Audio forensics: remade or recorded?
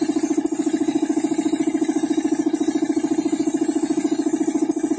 recorded